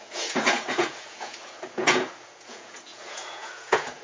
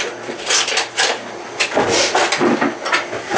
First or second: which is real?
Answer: second